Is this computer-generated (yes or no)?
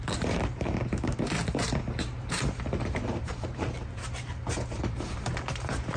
yes